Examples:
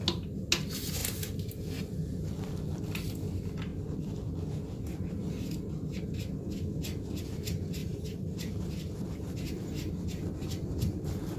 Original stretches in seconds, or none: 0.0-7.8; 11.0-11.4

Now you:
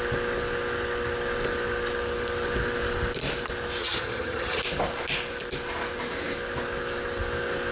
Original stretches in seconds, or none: 0.0-3.8; 4.6-7.7

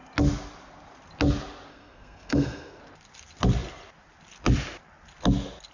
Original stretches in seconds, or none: 0.0-1.7; 2.8-5.7

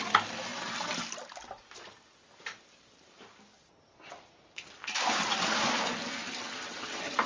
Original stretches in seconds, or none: 0.0-7.3

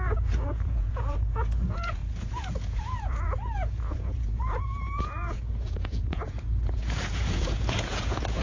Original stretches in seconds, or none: none

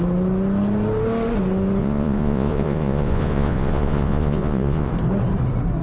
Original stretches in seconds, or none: 0.0-1.8; 4.9-5.8